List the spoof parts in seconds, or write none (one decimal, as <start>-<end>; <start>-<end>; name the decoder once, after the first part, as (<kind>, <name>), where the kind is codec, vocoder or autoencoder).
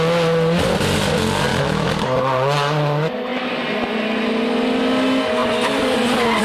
1.5-2.0 (autoencoder, DAC-VAE)